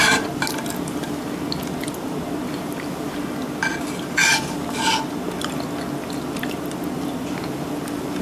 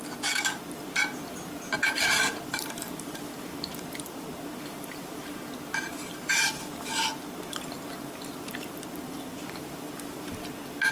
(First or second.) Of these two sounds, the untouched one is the first